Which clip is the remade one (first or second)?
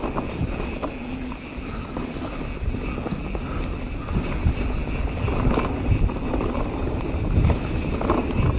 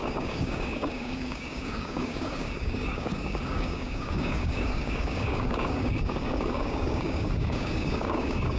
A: second